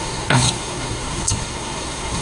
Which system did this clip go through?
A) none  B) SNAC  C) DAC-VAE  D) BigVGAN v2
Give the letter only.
B